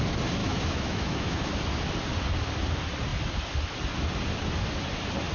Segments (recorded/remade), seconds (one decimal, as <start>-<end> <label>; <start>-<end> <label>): 0.0-0.4 recorded; 0.4-1.5 remade; 1.5-5.3 recorded

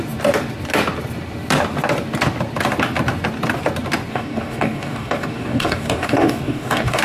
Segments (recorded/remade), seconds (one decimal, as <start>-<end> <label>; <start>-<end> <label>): 0.0-4.1 recorded; 4.1-7.0 remade

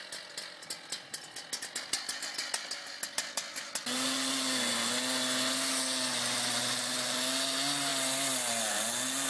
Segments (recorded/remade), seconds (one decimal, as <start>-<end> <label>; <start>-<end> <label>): 0.0-9.3 recorded